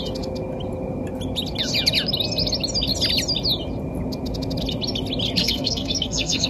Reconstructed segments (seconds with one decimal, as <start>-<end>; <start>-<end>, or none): 5.4-6.5